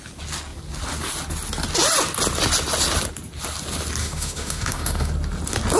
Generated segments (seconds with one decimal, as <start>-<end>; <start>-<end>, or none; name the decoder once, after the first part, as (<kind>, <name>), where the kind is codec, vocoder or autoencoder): 4.0-5.1 (autoencoder, DAC-VAE)